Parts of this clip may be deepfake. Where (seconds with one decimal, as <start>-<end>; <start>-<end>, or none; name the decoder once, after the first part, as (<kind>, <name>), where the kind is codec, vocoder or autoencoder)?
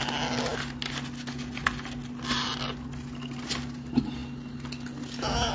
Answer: none